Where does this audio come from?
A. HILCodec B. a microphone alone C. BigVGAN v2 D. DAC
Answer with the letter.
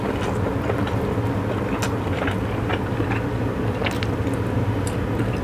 B